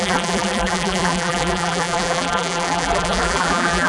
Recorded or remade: remade